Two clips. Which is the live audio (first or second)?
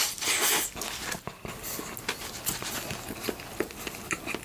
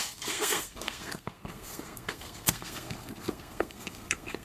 first